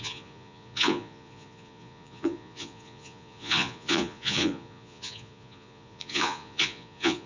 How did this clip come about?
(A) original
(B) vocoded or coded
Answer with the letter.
B